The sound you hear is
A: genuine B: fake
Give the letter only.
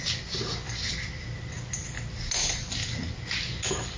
A